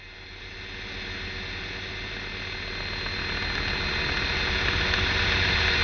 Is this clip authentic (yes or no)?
yes